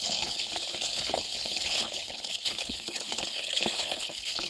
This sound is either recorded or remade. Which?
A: remade